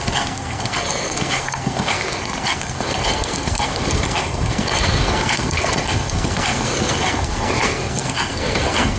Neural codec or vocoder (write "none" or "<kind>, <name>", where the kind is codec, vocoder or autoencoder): codec, SNAC